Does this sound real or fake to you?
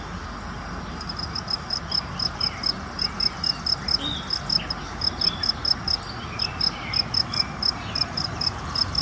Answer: real